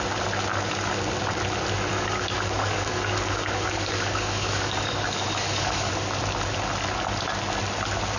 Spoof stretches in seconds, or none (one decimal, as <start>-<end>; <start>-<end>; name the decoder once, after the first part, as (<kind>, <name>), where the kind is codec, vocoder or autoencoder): 1.9-5.9 (codec, DAC)